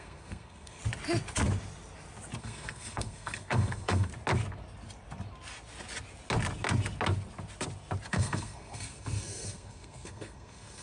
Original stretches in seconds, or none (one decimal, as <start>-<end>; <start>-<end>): 0.8-2.4; 4.1-8.1